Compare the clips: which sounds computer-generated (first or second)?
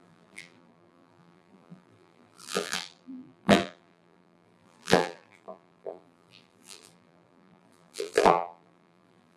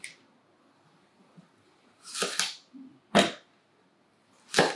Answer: first